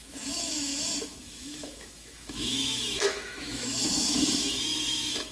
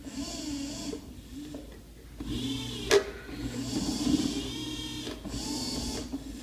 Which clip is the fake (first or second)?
first